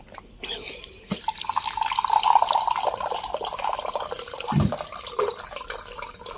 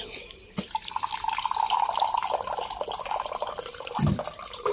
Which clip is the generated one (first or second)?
first